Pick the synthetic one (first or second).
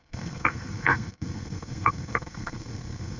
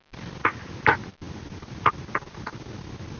first